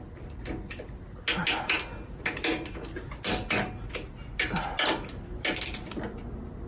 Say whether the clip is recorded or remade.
recorded